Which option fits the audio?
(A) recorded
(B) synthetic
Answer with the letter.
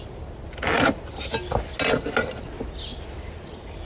A